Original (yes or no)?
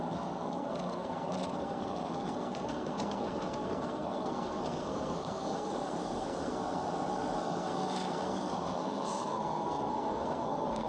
no